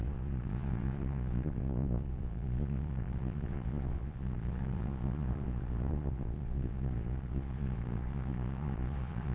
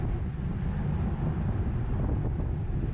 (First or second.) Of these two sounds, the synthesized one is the first